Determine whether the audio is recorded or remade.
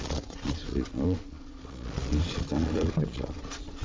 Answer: remade